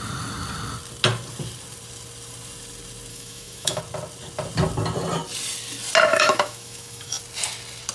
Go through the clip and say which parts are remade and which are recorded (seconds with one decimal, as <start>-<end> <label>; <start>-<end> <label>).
0.0-3.1 recorded; 3.1-3.8 remade; 3.8-6.1 recorded; 6.1-7.2 remade; 7.2-7.9 recorded